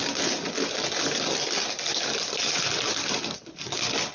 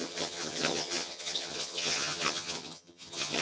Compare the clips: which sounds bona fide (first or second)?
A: first